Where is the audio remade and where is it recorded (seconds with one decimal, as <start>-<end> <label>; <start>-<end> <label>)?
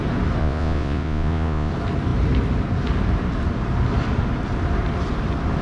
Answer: 0.0-0.4 recorded; 0.4-1.7 remade; 1.7-5.6 recorded